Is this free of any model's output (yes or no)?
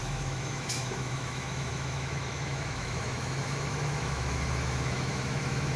no